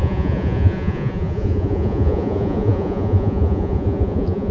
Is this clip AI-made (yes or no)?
yes